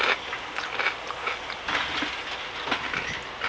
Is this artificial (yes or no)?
no